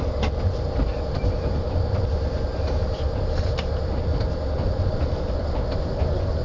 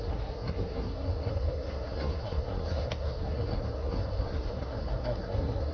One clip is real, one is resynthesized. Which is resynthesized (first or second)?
second